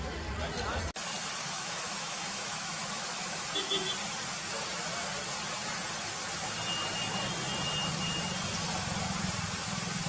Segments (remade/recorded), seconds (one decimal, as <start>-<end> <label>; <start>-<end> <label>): 0.0-1.4 recorded; 1.4-3.5 remade; 3.5-10.1 recorded

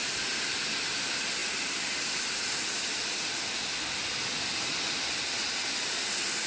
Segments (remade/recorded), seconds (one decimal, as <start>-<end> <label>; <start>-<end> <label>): 0.0-6.5 recorded

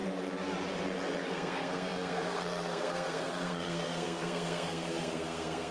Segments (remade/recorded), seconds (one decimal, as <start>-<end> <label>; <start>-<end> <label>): 0.0-1.3 recorded; 1.3-5.7 remade

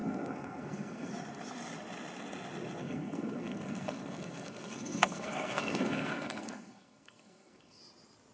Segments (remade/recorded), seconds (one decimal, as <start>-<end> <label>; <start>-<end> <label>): 0.0-1.1 remade; 1.1-2.8 recorded; 2.8-7.8 remade; 7.8-8.3 recorded

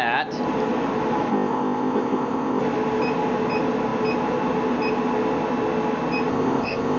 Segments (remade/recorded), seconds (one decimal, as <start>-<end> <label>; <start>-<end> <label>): 0.0-1.3 recorded; 1.3-2.6 remade; 2.6-6.3 recorded; 6.3-7.0 remade

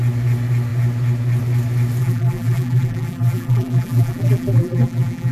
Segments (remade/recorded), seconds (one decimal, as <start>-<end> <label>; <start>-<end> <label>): 0.0-2.0 recorded; 2.0-5.3 remade

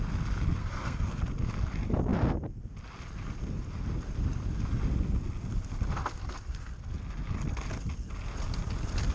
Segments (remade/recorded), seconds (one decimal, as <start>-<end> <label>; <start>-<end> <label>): 0.0-0.6 recorded; 0.6-1.2 remade; 1.2-9.1 recorded

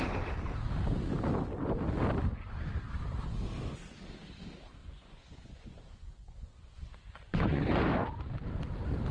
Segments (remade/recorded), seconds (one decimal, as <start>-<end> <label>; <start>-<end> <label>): 0.0-4.8 recorded; 4.8-7.6 remade; 7.6-9.1 recorded